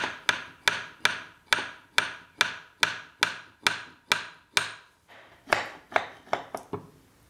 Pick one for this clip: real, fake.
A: real